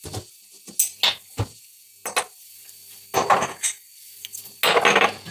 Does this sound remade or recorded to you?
recorded